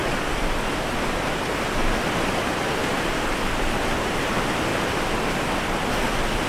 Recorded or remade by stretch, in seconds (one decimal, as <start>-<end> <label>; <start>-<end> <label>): 0.0-6.5 recorded